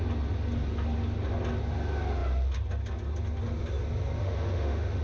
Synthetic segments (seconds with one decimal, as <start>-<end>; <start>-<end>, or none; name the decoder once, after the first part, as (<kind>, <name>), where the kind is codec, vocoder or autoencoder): 4.2-5.0 (autoencoder, DAC-VAE)